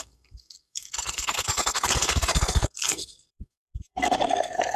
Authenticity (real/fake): fake